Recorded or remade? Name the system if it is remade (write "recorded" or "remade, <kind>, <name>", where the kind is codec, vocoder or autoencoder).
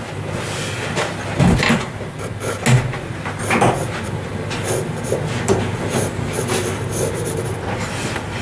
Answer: recorded